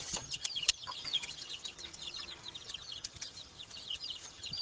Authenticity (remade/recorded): remade